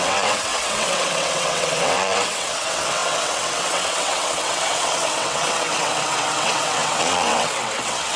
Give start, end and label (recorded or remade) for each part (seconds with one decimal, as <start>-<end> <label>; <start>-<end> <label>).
0.0-8.2 remade